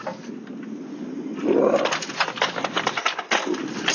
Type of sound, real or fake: real